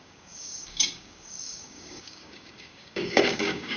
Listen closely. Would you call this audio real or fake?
fake